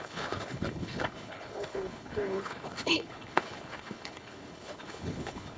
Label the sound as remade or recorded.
remade